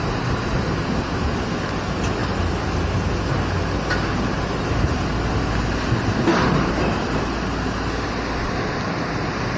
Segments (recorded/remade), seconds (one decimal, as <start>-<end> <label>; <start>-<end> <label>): 0.0-9.6 recorded